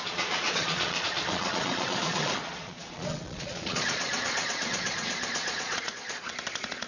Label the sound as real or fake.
fake